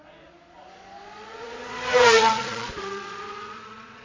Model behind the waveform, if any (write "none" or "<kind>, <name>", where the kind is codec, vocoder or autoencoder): vocoder, Vocos